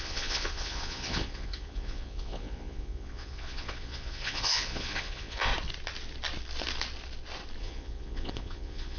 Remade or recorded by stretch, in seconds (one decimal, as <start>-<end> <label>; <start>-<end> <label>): 0.0-5.5 remade; 5.5-7.6 recorded; 7.6-9.0 remade